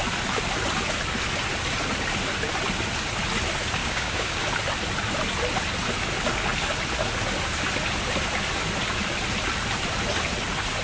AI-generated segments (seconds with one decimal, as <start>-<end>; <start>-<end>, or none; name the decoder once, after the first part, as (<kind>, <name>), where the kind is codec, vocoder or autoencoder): 3.8-4.4 (codec, DAC)